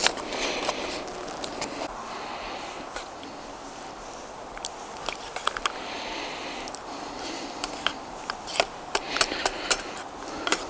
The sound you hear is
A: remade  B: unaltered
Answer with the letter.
B